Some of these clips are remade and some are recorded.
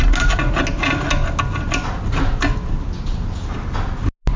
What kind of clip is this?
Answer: recorded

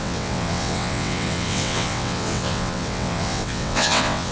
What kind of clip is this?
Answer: remade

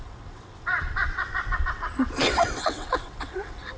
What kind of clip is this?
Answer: remade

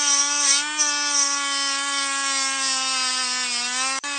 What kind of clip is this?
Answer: recorded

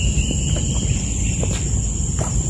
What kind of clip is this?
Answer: recorded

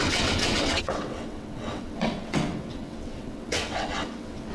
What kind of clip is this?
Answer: remade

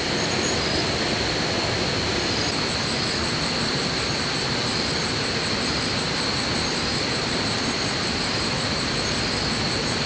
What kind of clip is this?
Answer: recorded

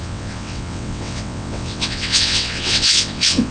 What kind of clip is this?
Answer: remade